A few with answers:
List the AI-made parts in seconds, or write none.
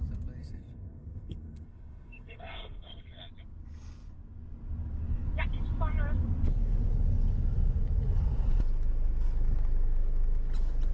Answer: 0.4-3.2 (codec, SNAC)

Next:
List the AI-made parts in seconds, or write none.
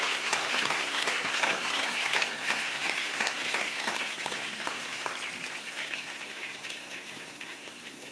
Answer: 0.0-5.1 (codec, SNAC); 5.6-8.1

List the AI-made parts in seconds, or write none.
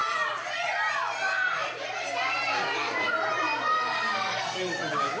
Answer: 3.7-4.6 (codec, SNAC)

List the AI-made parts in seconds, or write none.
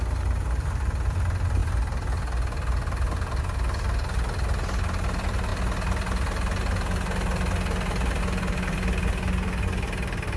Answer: none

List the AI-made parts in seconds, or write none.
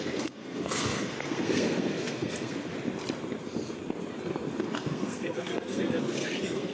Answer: 0.0-2.7 (codec, SNAC); 4.6-6.7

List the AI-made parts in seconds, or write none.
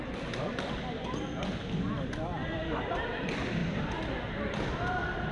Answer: none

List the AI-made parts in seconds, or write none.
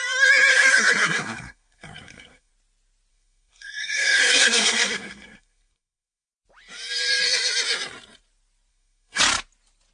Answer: 0.5-2.5 (codec, SNAC); 3.1-6.3; 8.7-9.2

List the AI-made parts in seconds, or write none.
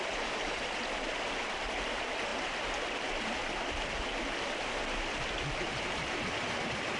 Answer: none